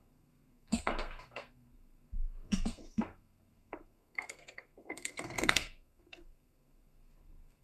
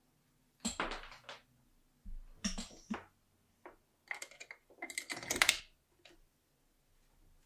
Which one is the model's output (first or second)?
first